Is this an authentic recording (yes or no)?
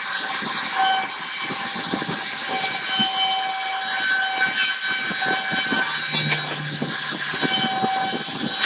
yes